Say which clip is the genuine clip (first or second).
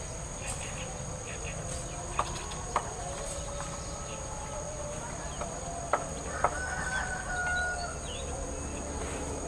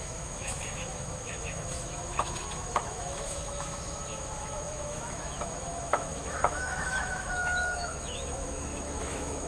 first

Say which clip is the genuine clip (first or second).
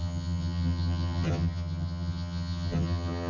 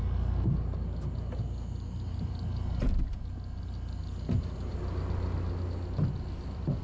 second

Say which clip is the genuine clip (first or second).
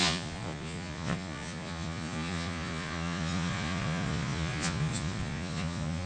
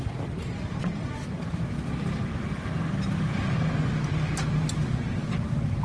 second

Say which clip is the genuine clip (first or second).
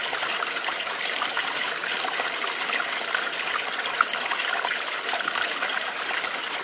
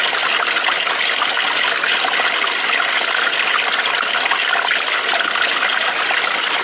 second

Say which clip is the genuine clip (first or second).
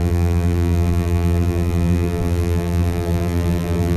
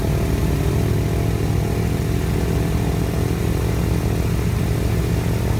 second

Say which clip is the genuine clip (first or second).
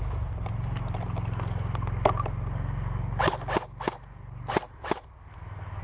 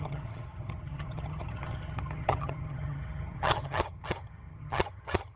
first